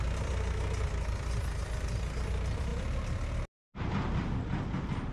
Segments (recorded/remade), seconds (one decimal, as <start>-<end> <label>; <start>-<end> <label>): 0.0-5.1 recorded